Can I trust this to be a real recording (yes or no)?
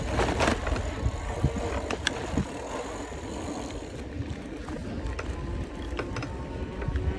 yes